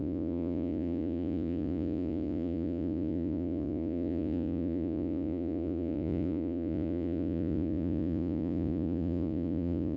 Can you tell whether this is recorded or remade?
remade